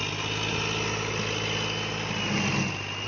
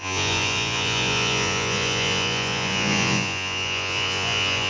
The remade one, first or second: second